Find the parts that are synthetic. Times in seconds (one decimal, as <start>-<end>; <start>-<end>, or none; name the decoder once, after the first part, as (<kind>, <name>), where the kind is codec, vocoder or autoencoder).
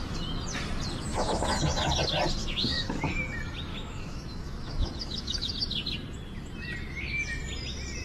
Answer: 1.1-1.9 (autoencoder, DAC-VAE); 2.4-3.1; 3.7-5.5